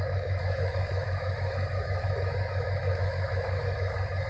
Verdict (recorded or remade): remade